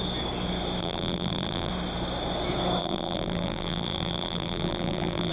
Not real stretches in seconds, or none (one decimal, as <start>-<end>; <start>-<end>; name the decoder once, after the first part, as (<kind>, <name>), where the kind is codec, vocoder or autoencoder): 0.8-1.7 (vocoder, BigVGAN v2); 2.8-5.3